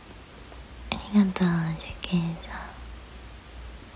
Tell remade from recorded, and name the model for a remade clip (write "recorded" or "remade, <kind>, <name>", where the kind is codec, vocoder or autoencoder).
recorded